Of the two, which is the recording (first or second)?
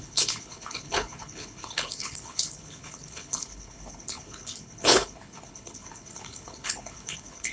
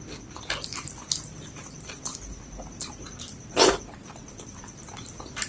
second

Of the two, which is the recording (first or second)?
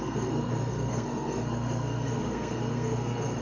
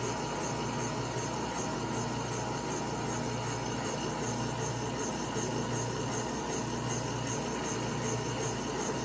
second